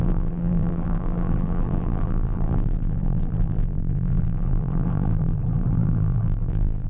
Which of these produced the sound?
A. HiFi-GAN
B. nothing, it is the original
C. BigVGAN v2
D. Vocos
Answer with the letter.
C